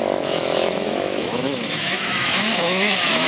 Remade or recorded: remade